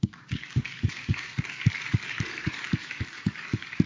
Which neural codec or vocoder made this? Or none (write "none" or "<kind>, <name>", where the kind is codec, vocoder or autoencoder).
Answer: codec, DAC